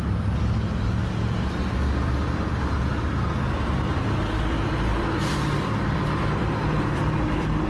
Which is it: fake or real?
fake